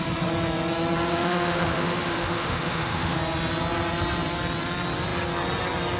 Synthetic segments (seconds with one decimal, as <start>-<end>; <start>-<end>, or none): 1.1-3.2